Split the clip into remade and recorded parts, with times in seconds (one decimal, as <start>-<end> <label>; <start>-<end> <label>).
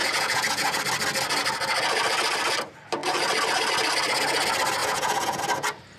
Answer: 0.0-0.8 remade; 0.8-4.8 recorded; 4.8-5.4 remade; 5.4-6.0 recorded